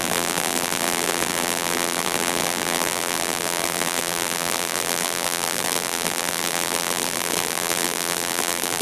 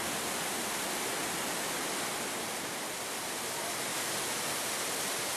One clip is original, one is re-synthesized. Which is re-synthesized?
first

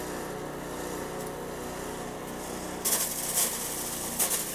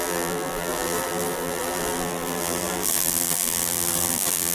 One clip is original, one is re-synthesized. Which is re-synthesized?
second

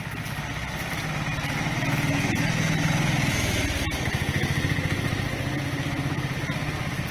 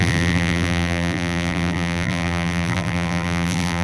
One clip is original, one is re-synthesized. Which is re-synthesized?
second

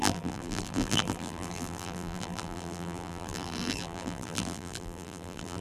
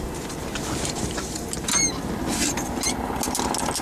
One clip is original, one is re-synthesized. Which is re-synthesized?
first